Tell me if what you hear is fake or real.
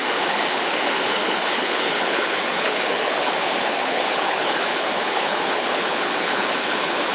fake